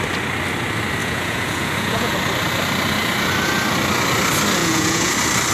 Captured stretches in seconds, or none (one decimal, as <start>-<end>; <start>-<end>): 0.0-1.0; 2.1-4.6; 5.1-5.5